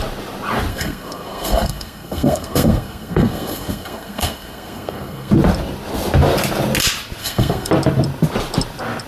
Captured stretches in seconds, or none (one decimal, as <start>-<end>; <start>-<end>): 0.0-0.7; 5.3-7.2; 7.7-9.1